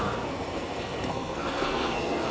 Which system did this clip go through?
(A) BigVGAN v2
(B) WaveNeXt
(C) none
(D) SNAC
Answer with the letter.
D